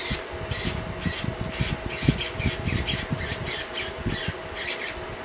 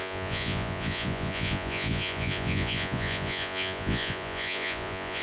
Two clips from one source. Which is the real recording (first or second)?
first